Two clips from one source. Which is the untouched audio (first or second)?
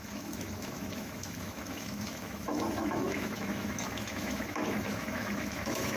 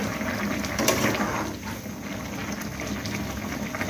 second